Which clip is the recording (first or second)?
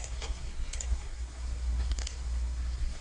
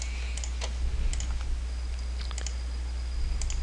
second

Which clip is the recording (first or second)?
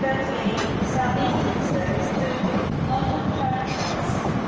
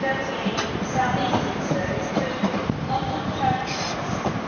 first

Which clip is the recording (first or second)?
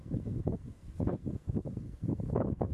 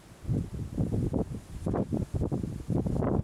second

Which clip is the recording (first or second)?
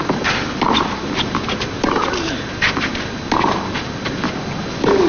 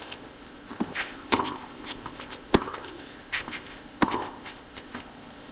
first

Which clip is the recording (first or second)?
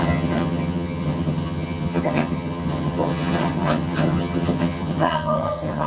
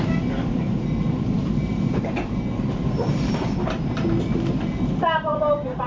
second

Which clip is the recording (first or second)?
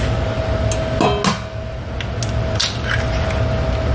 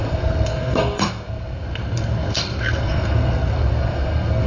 first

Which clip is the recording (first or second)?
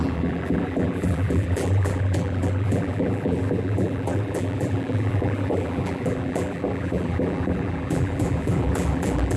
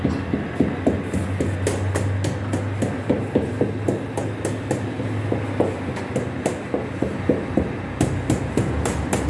second